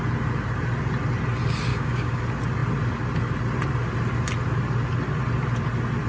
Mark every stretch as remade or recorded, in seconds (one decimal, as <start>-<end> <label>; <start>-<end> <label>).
0.0-1.7 recorded; 1.7-2.2 remade; 2.2-6.1 recorded